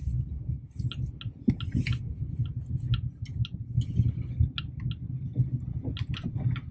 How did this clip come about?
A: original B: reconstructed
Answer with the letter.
A